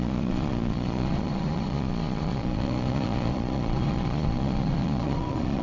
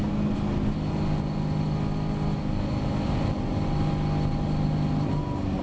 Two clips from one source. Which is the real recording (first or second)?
second